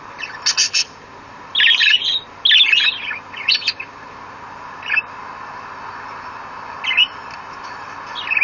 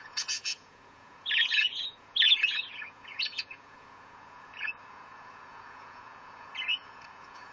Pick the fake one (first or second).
second